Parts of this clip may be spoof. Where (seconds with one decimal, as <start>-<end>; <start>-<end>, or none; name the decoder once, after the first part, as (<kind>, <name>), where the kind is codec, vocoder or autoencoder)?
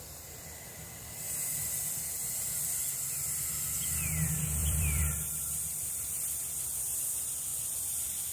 4.6-7.0 (vocoder, BigVGAN v2); 7.5-8.3